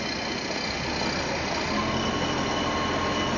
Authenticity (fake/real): real